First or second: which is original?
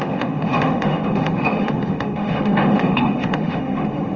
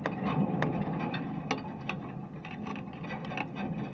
second